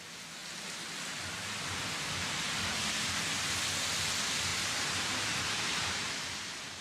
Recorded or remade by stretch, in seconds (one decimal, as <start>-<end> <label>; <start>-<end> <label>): 0.0-4.5 recorded; 4.5-6.2 remade; 6.2-6.8 recorded